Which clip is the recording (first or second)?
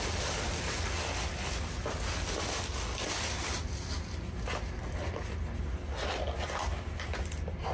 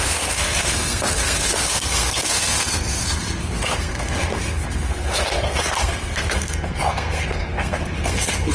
first